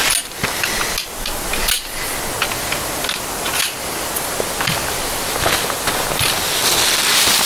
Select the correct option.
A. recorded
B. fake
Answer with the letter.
A